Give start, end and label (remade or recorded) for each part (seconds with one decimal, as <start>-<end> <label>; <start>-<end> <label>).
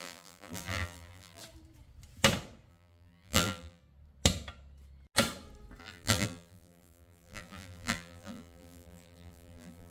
0.0-1.4 remade; 1.4-2.7 recorded; 2.7-3.8 remade; 3.8-5.8 recorded; 5.8-9.9 remade